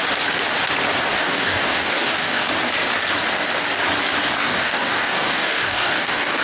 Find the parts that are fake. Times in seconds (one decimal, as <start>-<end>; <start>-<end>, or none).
1.1-2.5; 4.2-6.4